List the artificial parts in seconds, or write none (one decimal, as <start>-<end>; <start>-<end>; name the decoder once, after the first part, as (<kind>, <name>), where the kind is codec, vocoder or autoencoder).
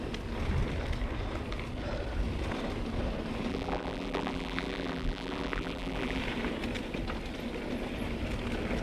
3.5-6.2 (vocoder, BigVGAN v2)